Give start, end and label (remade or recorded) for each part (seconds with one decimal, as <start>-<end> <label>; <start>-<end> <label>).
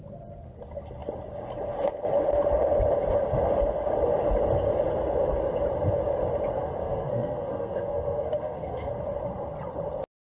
0.0-6.8 recorded; 6.8-8.9 remade; 8.9-10.3 recorded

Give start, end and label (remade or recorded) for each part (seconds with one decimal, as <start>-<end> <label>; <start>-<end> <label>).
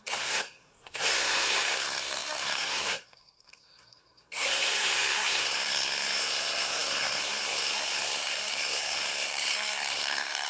0.0-10.5 remade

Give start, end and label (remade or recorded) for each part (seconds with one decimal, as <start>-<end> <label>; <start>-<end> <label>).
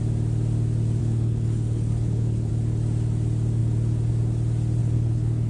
0.0-1.0 recorded; 1.0-2.5 remade; 2.5-4.8 recorded; 4.8-5.5 remade